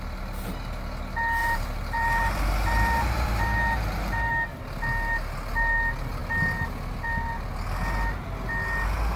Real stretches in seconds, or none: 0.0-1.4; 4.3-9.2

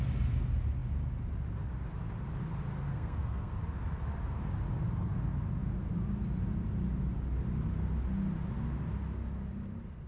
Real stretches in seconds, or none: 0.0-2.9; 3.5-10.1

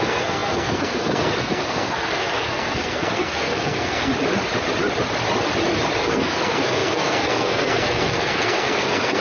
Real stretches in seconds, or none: 4.1-6.0